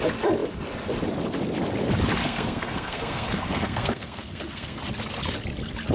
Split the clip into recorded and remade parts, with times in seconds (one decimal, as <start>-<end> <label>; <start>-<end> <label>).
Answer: 0.0-2.2 recorded; 2.2-4.8 remade; 4.8-5.9 recorded